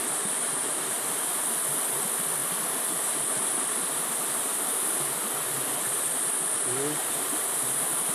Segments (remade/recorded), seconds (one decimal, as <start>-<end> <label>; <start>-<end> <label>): 0.0-8.1 recorded